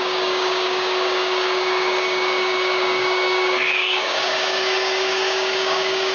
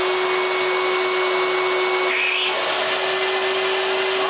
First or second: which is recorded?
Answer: second